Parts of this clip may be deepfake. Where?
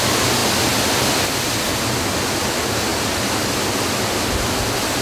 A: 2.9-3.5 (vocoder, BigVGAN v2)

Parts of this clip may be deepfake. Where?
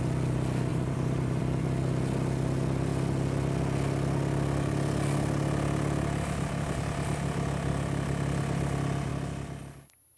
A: 0.7-1.4 (vocoder, BigVGAN v2)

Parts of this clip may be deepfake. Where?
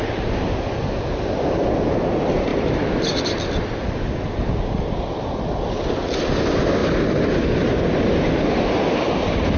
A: none